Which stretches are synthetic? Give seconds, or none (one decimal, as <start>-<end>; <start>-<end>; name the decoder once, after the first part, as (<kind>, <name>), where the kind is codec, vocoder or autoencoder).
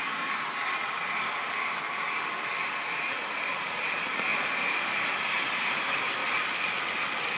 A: 0.0-6.2 (vocoder, BigVGAN v2)